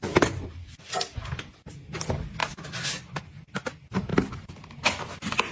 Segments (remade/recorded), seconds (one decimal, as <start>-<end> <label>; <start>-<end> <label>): 0.0-5.5 recorded